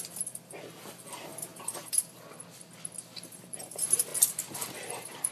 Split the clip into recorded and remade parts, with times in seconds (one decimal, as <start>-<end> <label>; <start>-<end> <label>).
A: 0.0-5.3 remade